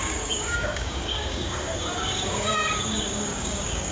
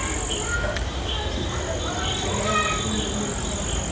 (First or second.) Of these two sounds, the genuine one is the second